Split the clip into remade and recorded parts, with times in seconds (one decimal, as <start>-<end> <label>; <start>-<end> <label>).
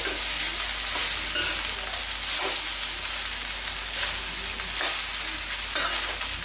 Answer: 0.0-6.4 recorded